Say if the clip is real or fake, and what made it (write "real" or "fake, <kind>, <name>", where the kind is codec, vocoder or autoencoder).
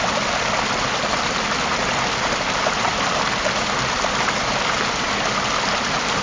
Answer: real